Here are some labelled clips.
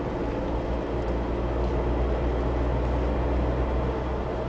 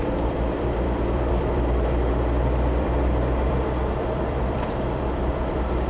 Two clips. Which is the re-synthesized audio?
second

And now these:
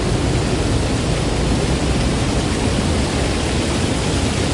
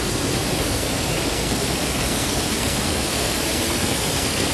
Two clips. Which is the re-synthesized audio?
second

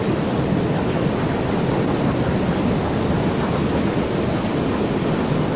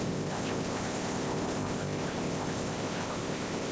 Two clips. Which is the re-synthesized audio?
second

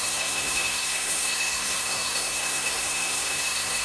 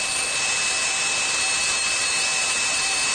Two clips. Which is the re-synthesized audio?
first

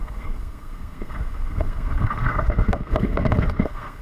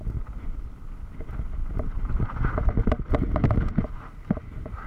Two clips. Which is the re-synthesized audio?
first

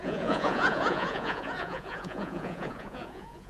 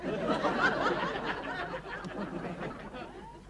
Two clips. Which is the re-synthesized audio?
first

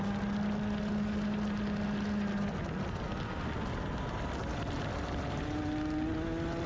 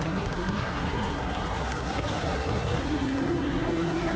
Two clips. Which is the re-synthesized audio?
second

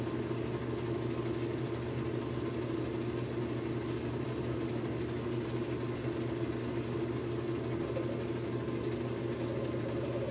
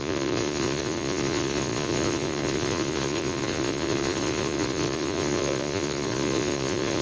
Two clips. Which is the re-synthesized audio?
second